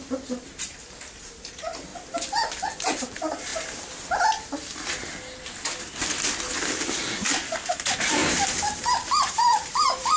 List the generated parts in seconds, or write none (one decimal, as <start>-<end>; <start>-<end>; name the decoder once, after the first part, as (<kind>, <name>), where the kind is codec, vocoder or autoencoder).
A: 0.0-1.9 (vocoder, BigVGAN v2); 3.0-3.5; 7.7-8.2; 8.8-10.2